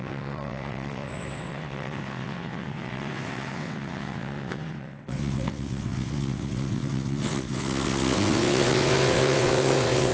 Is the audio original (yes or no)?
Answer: no